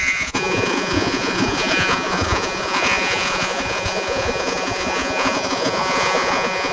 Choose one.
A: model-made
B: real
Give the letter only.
A